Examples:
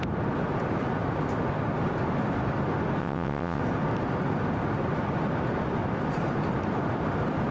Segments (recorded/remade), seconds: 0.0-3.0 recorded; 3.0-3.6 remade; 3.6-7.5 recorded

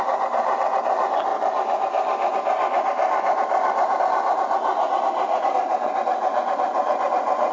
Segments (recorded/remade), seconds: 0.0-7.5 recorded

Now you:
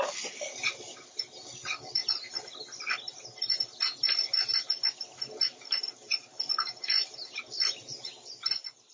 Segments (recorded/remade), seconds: 0.0-8.9 recorded

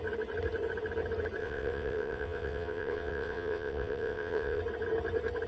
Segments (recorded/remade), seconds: 0.0-1.4 recorded; 1.4-4.6 remade; 4.6-5.5 recorded

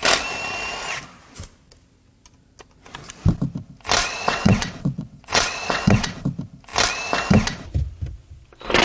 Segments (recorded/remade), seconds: 0.0-4.0 recorded; 4.0-6.2 remade; 6.2-8.8 recorded

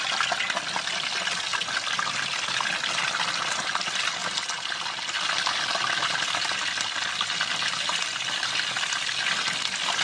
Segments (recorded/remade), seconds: 0.0-10.0 recorded

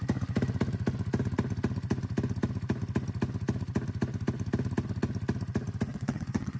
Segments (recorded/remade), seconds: 0.0-5.9 recorded; 5.9-6.6 remade

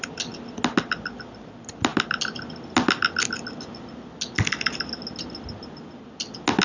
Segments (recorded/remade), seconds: 0.0-6.6 recorded